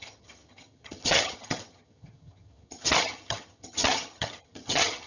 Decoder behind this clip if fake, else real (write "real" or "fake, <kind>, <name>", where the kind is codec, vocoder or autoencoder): fake, vocoder, HiFi-GAN